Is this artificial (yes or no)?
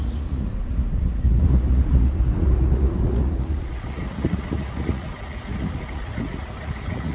yes